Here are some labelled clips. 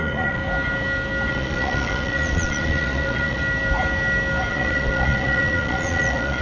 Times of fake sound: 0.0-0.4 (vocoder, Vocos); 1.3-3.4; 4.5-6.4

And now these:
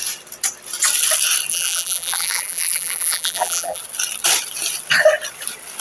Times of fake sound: 1.5-3.8 (vocoder, BigVGAN v2)

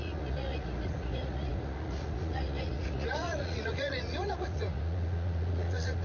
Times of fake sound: 0.0-6.0 (vocoder, Vocos)

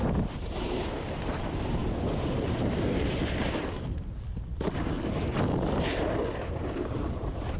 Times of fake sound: 0.0-1.8 (vocoder, BigVGAN v2); 6.4-7.6

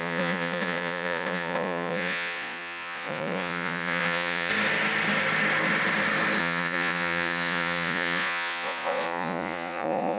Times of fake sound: 0.0-4.5 (vocoder, Vocos); 6.4-10.2

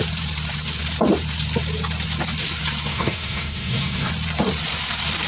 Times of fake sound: 2.9-4.1 (codec, SNAC)

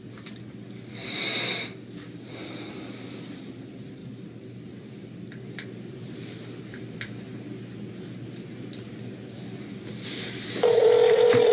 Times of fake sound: 4.0-5.1 (vocoder, BigVGAN v2)